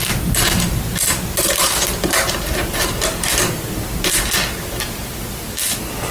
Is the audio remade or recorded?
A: recorded